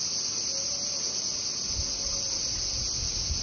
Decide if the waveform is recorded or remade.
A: recorded